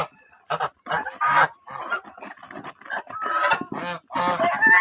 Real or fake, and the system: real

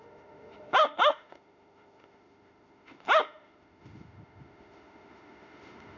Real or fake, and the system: fake, autoencoder, DAC-VAE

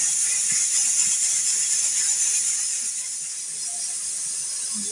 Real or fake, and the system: real